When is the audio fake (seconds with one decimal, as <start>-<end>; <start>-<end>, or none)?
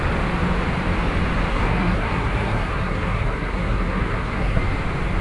1.5-4.6